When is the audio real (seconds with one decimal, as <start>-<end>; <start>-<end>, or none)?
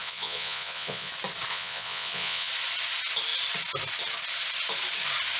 1.1-1.5; 2.5-5.4